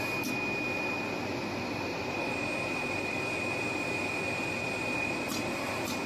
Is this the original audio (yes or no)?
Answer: yes